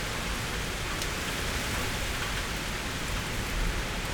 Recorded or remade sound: recorded